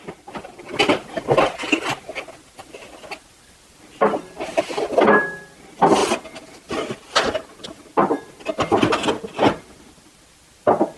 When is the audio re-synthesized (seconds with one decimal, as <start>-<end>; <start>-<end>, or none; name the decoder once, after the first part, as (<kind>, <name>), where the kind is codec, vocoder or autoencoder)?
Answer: none